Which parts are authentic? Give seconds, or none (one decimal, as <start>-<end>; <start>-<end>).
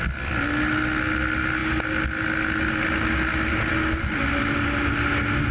0.0-5.5